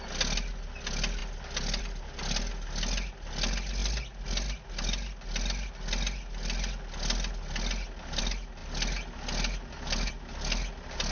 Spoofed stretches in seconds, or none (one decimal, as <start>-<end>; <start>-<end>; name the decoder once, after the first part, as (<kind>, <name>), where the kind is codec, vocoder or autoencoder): none